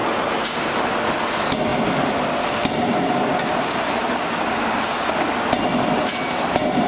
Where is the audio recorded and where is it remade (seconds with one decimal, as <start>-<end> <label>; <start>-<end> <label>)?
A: 0.0-6.9 recorded